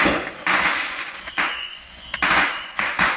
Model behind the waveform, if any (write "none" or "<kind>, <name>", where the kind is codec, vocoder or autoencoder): vocoder, Vocos